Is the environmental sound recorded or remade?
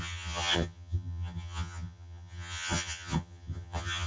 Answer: remade